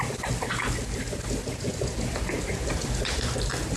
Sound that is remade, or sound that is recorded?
recorded